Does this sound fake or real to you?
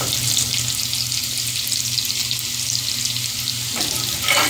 real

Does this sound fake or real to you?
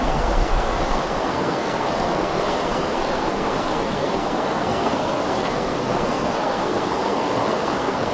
fake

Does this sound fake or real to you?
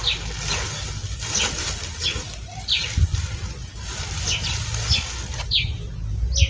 real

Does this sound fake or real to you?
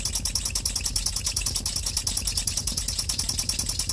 real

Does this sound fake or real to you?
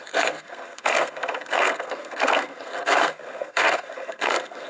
fake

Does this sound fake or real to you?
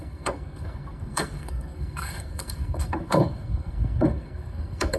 fake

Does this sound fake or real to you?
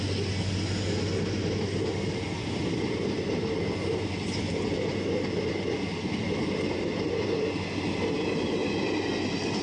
real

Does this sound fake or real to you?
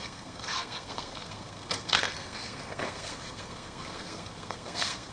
fake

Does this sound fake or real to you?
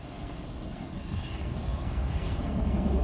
fake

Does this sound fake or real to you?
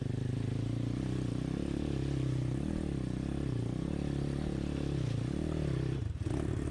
real